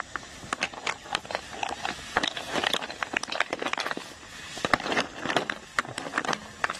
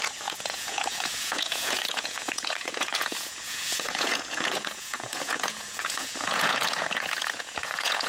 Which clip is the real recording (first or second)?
first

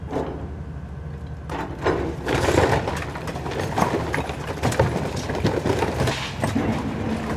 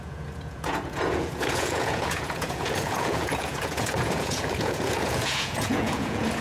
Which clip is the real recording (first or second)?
first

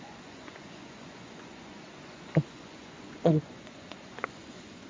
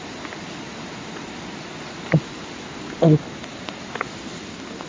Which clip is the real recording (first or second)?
second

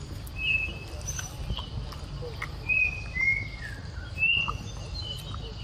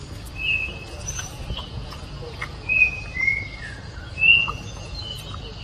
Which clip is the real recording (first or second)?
first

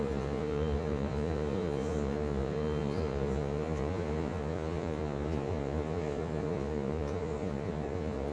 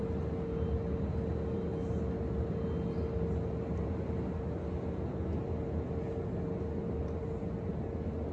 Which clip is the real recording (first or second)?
second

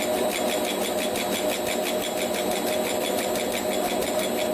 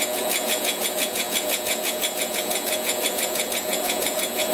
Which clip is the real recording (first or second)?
first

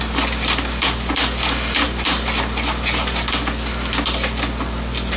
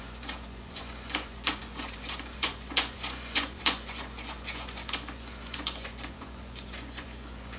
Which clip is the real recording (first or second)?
first